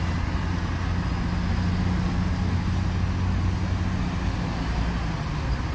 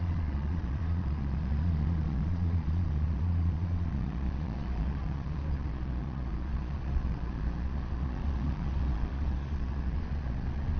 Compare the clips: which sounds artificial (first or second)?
second